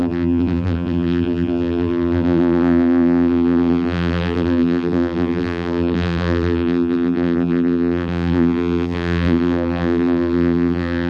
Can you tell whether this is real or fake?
fake